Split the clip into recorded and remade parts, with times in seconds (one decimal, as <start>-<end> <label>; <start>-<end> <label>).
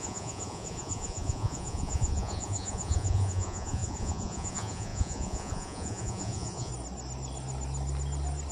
0.0-6.7 remade; 6.7-8.5 recorded